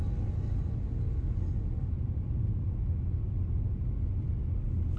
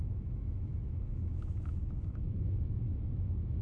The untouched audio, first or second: first